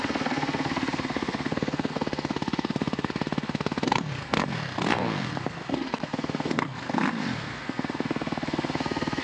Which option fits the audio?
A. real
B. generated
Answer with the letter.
B